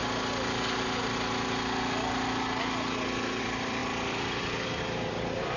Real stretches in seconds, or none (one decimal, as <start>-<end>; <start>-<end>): 0.0-3.4